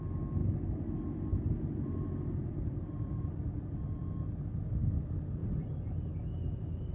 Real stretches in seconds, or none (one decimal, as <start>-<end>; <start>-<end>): 0.0-0.4; 0.9-1.3; 3.2-6.9